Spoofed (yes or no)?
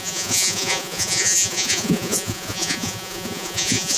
yes